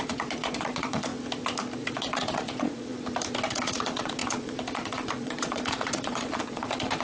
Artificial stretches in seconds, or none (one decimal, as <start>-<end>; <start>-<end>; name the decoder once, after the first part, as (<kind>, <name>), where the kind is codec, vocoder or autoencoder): 0.0-1.1 (vocoder, Vocos); 1.9-2.9; 3.5-7.0